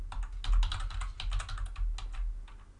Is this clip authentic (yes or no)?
yes